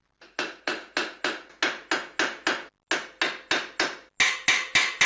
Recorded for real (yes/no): yes